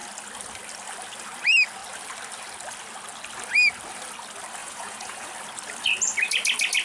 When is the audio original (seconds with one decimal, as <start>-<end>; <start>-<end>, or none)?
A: 0.0-4.6; 5.3-6.8